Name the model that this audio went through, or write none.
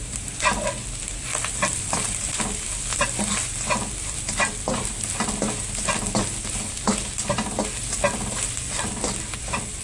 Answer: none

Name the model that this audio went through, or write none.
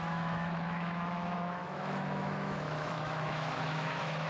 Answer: autoencoder, DAC-VAE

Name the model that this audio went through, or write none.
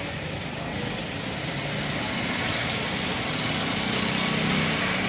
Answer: none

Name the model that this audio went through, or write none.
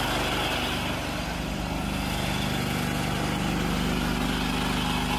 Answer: none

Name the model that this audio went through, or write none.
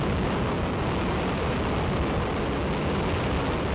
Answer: none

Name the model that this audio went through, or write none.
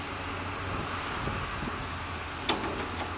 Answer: none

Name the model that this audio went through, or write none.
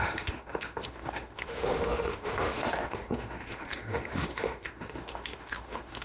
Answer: autoencoder, DAC-VAE